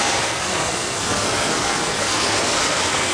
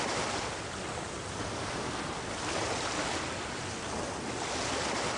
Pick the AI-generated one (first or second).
first